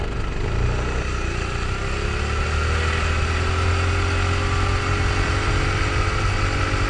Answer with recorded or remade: recorded